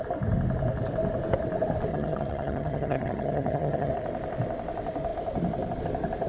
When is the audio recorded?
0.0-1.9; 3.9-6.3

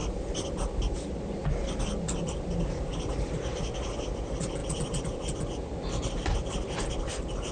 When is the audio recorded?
0.0-7.5

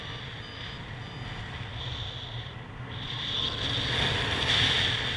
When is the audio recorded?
0.0-5.2